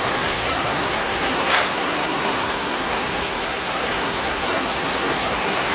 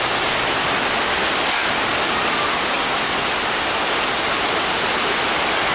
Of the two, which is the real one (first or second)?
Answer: second